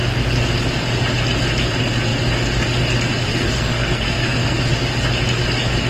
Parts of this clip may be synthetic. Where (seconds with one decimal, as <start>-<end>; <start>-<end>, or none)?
3.3-4.6